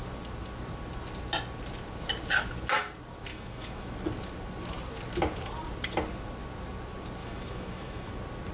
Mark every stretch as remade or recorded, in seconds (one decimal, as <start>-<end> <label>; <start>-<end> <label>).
0.0-3.3 recorded; 3.3-3.9 remade; 3.9-7.2 recorded; 7.2-8.1 remade; 8.1-8.5 recorded